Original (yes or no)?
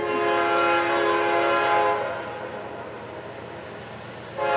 yes